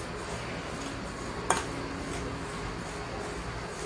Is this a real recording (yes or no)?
yes